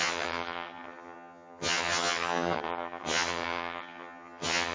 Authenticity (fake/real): fake